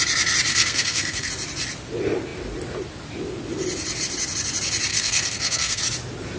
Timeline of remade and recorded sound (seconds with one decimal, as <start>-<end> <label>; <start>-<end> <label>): 0.0-0.5 recorded; 0.5-1.3 remade; 1.3-4.9 recorded; 4.9-5.8 remade; 5.8-6.4 recorded